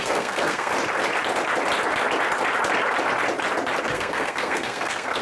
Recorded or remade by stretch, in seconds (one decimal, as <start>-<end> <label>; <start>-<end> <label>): 0.0-0.7 remade; 0.7-3.8 recorded; 3.8-5.2 remade